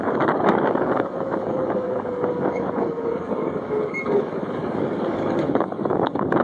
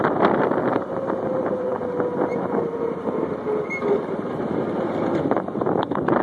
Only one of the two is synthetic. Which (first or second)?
first